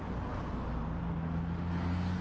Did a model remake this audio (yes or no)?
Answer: no